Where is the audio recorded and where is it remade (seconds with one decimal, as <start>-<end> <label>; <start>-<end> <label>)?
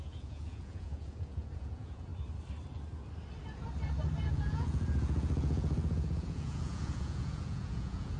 0.0-2.1 remade; 2.1-4.3 recorded; 4.3-8.2 remade